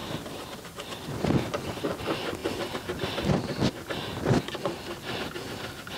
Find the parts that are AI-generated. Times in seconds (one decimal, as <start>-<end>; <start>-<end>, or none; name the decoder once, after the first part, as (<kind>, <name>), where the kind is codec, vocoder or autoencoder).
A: none